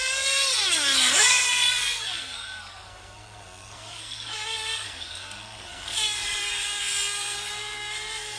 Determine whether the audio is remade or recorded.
remade